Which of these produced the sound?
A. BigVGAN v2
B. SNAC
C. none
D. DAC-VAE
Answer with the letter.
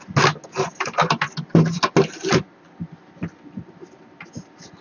C